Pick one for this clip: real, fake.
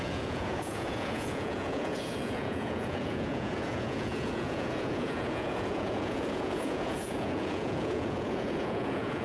fake